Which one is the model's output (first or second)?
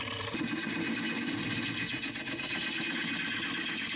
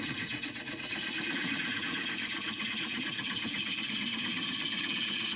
second